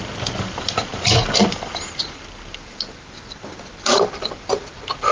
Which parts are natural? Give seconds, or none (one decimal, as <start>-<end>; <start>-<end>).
0.0-5.1